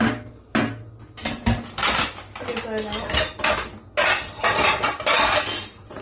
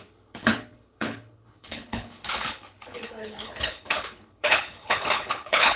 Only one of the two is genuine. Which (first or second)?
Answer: first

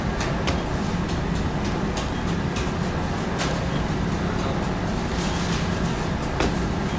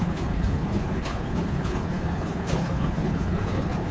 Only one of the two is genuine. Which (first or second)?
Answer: first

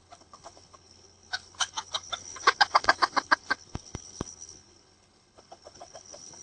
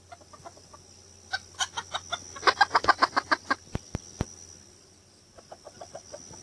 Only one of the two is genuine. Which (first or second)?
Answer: second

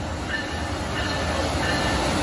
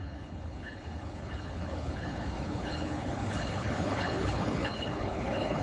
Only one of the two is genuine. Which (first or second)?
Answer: first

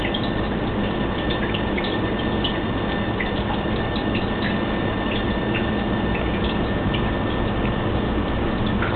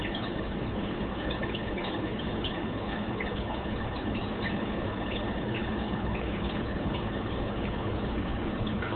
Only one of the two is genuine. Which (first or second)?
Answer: first